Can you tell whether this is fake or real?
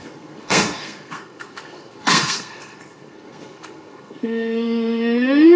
fake